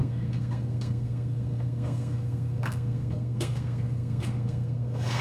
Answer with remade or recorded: remade